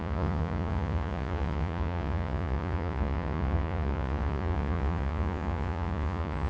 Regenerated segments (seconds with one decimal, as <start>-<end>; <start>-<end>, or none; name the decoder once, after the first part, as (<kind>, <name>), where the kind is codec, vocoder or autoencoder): 0.0-6.5 (vocoder, Vocos)